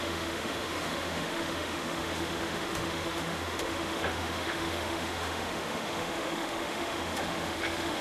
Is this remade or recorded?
remade